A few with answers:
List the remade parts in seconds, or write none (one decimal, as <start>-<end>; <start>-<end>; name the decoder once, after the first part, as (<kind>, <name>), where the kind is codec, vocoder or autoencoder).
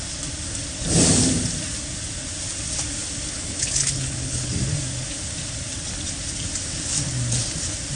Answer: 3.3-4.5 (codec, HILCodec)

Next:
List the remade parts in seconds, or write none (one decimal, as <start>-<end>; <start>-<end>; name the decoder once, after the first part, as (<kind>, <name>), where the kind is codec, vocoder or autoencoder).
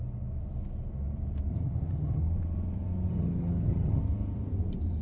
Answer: 1.5-2.2 (vocoder, HiFi-GAN); 3.1-4.0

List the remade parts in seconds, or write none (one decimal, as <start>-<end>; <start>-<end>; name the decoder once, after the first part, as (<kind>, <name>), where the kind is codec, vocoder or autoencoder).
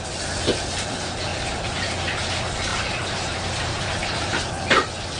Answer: 1.3-1.9 (vocoder, BigVGAN v2); 2.7-4.5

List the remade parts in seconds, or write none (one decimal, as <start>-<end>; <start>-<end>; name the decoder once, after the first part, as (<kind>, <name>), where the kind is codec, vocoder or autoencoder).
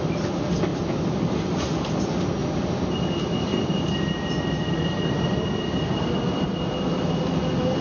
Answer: none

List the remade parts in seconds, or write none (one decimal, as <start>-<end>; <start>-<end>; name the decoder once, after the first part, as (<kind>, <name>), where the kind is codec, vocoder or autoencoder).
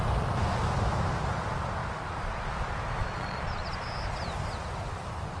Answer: 3.0-3.7 (vocoder, Vocos)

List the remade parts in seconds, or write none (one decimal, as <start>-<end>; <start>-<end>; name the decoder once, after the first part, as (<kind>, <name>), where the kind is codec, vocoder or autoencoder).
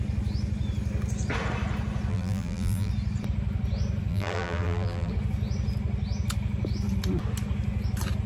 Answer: 2.1-2.9 (vocoder, BigVGAN v2); 4.1-5.1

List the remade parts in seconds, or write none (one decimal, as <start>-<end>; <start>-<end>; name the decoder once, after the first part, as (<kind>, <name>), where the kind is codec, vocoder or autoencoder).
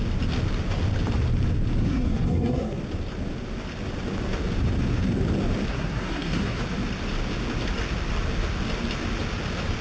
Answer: 1.8-2.8 (codec, SNAC); 5.7-6.6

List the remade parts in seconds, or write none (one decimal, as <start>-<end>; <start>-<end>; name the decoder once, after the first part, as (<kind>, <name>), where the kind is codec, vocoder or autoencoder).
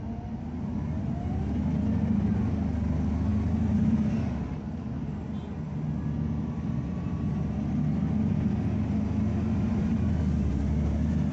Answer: none